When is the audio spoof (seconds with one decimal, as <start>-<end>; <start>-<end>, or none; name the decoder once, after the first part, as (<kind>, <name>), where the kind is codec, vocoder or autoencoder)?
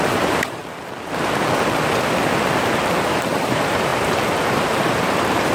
0.0-0.6 (vocoder, BigVGAN v2); 2.8-5.5